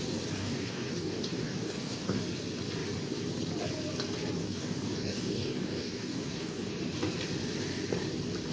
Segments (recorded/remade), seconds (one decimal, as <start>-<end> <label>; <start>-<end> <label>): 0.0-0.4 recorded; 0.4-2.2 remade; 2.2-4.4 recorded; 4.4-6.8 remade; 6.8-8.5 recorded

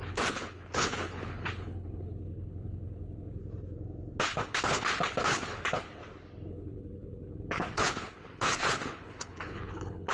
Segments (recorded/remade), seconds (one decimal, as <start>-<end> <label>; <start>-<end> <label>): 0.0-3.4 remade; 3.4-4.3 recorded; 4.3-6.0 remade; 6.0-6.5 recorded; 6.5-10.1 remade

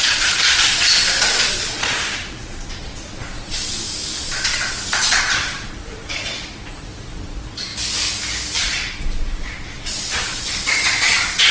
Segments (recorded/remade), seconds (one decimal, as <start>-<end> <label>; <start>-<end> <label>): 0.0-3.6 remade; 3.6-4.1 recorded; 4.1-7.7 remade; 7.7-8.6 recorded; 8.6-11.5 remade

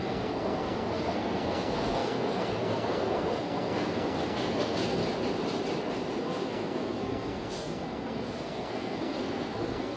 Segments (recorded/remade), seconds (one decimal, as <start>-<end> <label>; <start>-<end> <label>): 0.0-5.0 remade; 5.0-6.2 recorded; 6.2-10.0 remade

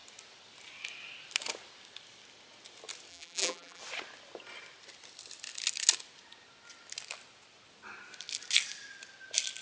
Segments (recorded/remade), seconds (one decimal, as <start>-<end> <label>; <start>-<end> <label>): 0.0-3.1 recorded; 3.1-3.8 remade; 3.8-9.6 recorded

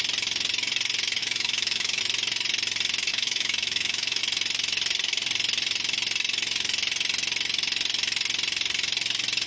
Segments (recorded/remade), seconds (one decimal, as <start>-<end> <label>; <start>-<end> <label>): 0.0-1.2 recorded; 1.2-2.0 remade; 2.0-3.1 recorded; 3.1-4.2 remade; 4.2-9.5 recorded

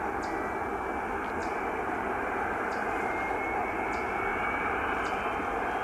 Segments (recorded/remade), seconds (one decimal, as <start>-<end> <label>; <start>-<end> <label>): 0.0-1.4 recorded; 1.4-3.3 remade; 3.3-4.3 recorded; 4.3-5.1 remade; 5.1-5.8 recorded